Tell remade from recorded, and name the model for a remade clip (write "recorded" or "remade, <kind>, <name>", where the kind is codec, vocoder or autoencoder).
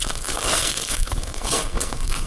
remade, codec, SNAC